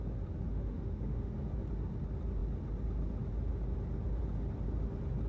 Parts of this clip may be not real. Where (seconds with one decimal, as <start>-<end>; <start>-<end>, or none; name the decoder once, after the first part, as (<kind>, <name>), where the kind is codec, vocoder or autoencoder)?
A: 0.5-1.3 (autoencoder, DAC-VAE)